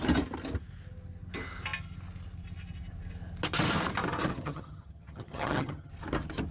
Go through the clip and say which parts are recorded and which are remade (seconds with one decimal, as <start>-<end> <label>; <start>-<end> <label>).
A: 0.0-4.3 recorded; 4.3-5.9 remade; 5.9-6.5 recorded